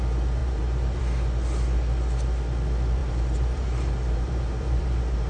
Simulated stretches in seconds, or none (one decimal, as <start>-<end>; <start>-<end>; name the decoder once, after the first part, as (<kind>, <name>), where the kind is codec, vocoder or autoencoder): 0.4-1.0 (vocoder, BigVGAN v2); 3.0-5.3

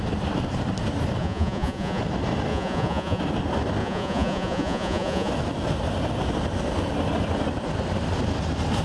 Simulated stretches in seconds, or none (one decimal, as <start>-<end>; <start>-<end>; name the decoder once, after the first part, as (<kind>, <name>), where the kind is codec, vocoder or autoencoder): 1.2-2.0 (vocoder, Vocos); 2.5-3.2; 3.8-5.3